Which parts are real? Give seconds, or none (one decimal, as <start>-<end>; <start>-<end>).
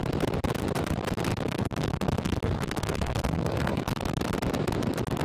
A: 0.0-1.3; 4.0-5.2